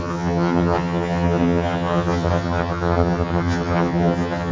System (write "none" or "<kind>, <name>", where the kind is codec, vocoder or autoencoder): vocoder, HiFi-GAN